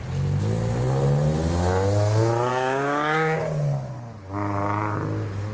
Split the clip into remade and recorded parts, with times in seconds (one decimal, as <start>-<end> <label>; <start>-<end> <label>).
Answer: 0.0-2.5 recorded; 2.5-3.4 remade; 3.4-5.5 recorded